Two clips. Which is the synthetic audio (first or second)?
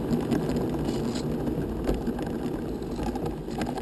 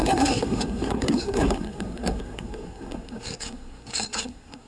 second